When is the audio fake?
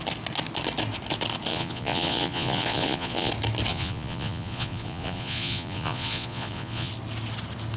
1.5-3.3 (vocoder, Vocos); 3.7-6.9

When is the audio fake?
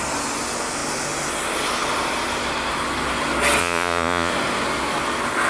3.6-4.3 (vocoder, Vocos)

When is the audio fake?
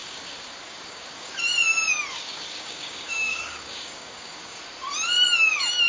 0.0-1.3 (codec, DAC); 2.1-4.6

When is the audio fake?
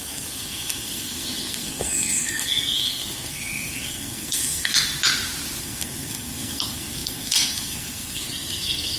0.0-4.7 (codec, SNAC); 5.6-9.0